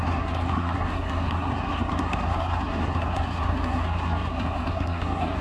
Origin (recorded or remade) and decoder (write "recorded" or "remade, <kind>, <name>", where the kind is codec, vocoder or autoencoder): remade, codec, SNAC